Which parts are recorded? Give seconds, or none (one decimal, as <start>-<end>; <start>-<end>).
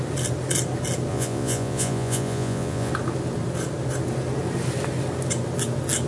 0.0-1.1; 2.9-6.1